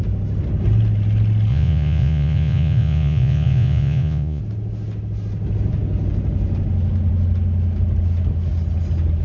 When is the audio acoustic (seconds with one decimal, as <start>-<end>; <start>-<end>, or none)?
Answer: 0.0-1.5; 4.4-9.2